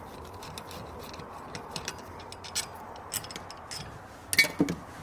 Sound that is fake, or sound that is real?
real